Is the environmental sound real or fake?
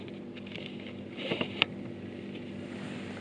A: real